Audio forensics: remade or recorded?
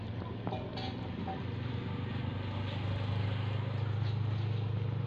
recorded